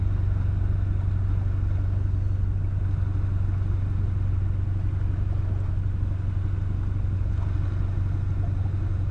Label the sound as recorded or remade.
recorded